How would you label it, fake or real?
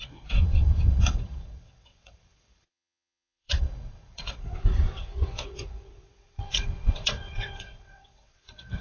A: fake